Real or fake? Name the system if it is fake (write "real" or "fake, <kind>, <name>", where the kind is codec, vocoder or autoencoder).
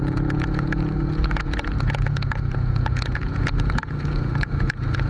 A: fake, vocoder, Vocos